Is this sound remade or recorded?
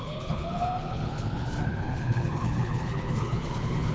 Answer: remade